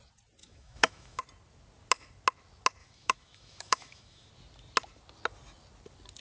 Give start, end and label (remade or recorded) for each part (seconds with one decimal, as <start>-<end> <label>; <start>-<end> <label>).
0.0-0.4 recorded; 0.4-1.2 remade; 1.2-2.8 recorded; 2.8-4.3 remade; 4.3-6.2 recorded